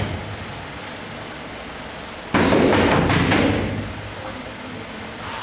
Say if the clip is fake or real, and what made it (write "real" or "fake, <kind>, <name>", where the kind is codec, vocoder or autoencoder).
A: real